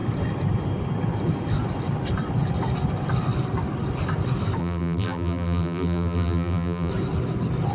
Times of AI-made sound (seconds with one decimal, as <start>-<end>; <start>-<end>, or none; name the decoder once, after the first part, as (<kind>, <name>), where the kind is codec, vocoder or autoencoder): 4.6-6.9 (vocoder, BigVGAN v2)